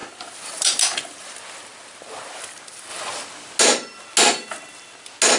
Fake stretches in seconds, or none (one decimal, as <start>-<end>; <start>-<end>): 0.0-1.6